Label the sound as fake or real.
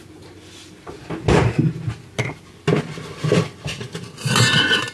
real